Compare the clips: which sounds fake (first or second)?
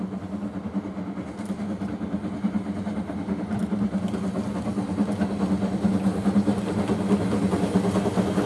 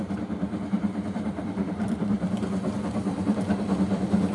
second